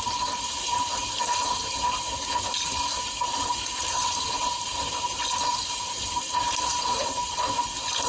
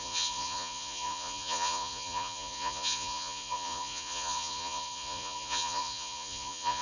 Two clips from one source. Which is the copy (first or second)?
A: second